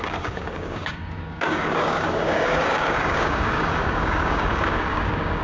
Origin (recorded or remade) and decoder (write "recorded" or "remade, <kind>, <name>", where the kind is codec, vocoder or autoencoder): remade, codec, DAC